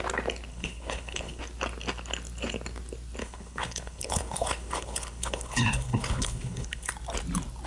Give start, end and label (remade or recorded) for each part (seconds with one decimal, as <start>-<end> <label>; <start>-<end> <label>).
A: 0.0-0.5 recorded; 0.5-1.4 remade; 1.4-3.2 recorded; 3.2-6.9 remade; 6.9-7.7 recorded